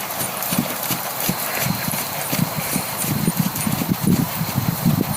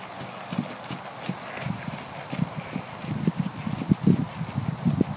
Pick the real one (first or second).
second